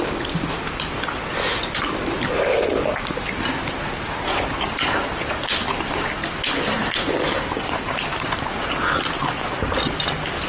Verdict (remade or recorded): recorded